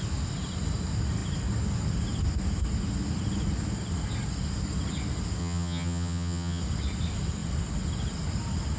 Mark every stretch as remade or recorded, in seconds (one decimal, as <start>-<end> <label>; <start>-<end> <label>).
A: 0.0-5.4 recorded; 5.4-6.6 remade; 6.6-8.8 recorded